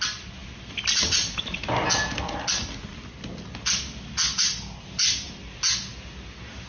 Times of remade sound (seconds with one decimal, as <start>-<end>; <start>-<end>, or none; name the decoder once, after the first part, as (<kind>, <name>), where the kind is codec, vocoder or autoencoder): none